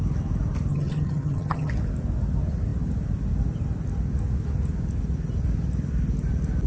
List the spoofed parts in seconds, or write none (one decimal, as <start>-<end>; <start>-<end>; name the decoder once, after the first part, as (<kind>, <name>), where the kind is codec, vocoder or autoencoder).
0.7-1.7 (vocoder, HiFi-GAN)